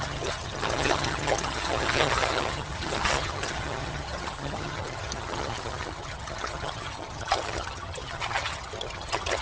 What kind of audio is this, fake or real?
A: fake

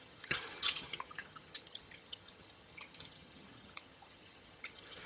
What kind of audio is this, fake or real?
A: fake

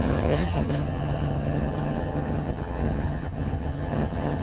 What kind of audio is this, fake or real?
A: fake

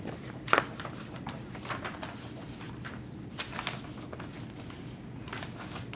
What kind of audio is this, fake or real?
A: real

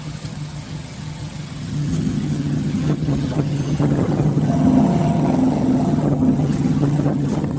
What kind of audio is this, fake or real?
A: fake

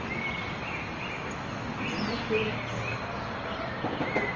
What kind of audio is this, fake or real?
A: real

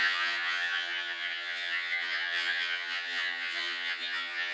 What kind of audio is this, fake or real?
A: fake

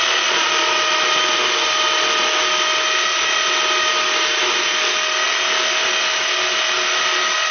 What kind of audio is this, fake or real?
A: real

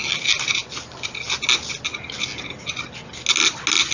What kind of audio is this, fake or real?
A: real